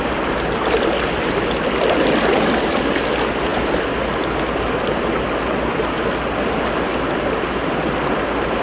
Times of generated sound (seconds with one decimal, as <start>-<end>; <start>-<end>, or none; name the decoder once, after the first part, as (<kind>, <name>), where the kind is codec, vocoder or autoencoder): none